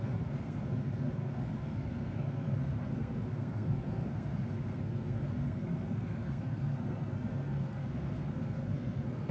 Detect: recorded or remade remade